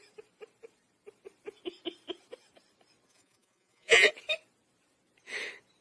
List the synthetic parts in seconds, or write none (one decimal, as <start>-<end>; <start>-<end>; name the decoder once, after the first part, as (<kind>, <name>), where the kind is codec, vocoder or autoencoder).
3.1-4.1 (vocoder, Vocos)